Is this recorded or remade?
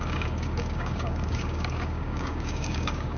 remade